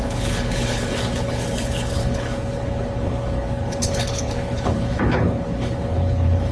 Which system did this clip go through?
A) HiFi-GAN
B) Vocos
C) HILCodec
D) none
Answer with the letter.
C